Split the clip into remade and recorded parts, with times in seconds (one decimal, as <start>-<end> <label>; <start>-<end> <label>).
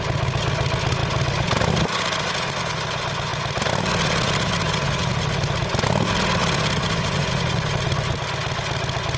0.0-9.2 recorded